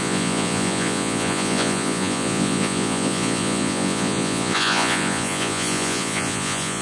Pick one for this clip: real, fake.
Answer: fake